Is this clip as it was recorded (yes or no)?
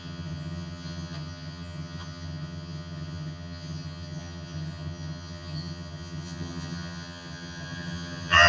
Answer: no